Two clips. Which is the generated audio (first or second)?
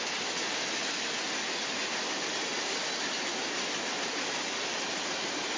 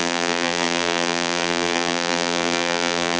second